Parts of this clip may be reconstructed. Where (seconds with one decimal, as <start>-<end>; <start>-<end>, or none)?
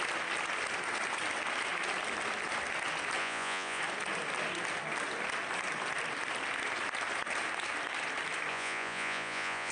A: 3.2-3.8; 8.5-9.7